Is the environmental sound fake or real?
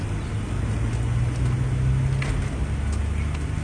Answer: real